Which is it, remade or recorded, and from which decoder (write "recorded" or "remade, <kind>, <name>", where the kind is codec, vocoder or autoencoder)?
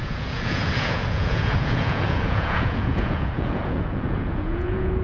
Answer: remade, vocoder, Vocos